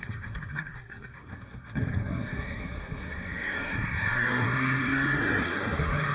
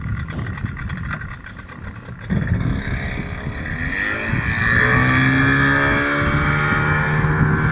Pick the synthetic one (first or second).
first